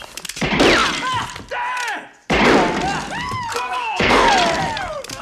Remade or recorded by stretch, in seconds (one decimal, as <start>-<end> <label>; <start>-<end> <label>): 0.0-3.5 recorded; 3.5-4.3 remade; 4.3-5.2 recorded